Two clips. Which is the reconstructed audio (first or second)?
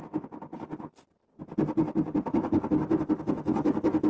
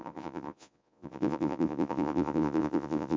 second